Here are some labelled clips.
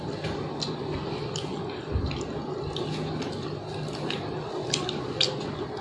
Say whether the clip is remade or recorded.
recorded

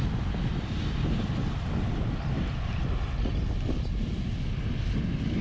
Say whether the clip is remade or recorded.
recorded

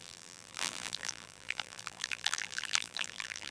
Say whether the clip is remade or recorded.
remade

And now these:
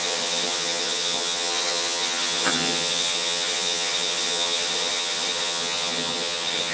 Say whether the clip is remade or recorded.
remade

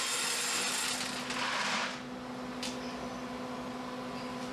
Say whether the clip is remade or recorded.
recorded